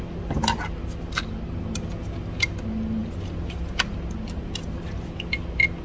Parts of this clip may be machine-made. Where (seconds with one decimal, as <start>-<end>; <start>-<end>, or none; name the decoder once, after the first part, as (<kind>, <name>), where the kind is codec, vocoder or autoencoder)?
none